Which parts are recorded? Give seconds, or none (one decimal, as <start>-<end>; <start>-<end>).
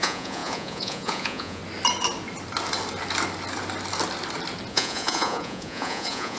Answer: 1.6-4.7